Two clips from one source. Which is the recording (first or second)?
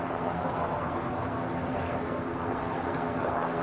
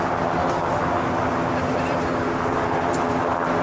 second